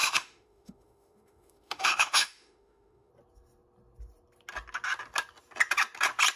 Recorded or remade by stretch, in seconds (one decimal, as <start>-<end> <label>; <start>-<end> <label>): 0.0-3.1 remade; 3.1-6.4 recorded